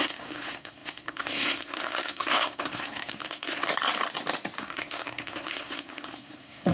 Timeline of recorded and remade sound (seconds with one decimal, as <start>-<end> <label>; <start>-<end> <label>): 0.0-3.7 remade; 3.7-4.6 recorded; 4.6-6.7 remade